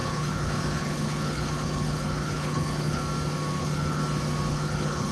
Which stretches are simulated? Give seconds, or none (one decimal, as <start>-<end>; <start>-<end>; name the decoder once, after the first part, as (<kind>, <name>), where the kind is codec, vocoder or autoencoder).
0.0-3.0 (codec, HILCodec); 3.6-4.0; 4.5-5.1